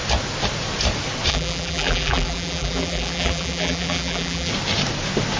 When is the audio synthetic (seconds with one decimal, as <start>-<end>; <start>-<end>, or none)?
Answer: 1.3-4.5